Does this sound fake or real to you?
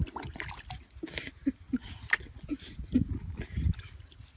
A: real